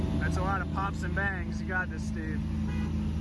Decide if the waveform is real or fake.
real